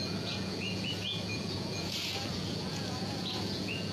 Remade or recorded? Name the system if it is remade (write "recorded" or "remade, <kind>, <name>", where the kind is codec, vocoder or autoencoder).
remade, vocoder, Vocos